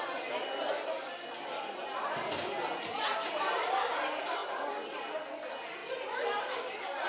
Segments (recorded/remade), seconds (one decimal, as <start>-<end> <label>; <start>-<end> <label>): 0.0-7.1 recorded